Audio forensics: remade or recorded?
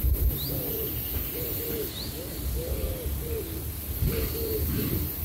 recorded